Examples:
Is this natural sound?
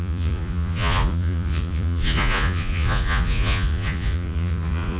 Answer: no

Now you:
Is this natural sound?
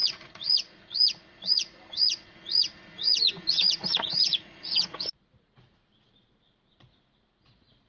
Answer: no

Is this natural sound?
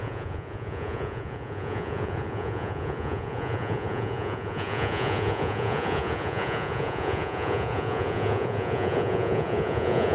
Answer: no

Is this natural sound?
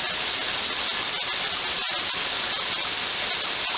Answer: yes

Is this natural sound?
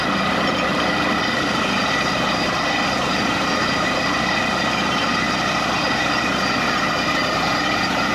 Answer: yes